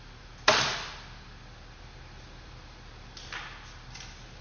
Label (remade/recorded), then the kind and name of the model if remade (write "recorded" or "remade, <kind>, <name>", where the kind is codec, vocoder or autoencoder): recorded